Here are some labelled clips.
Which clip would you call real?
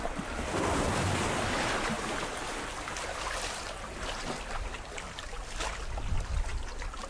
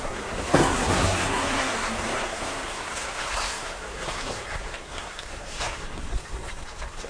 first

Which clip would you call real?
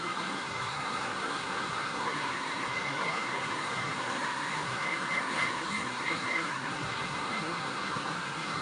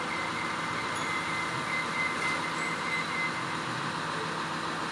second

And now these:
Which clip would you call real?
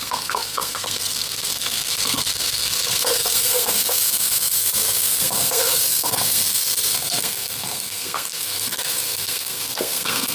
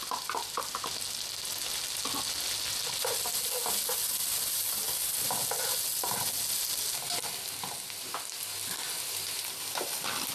second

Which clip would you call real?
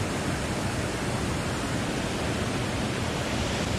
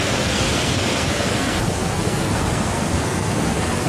first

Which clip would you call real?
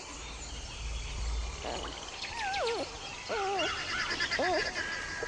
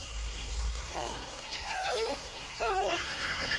first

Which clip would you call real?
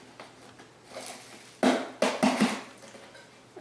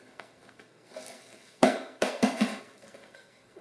first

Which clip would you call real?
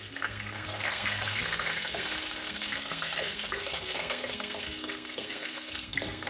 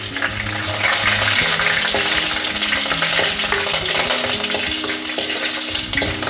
second